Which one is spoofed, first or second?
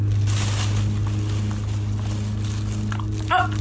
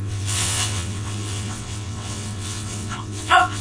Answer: second